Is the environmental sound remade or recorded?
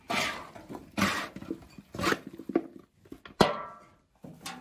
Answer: recorded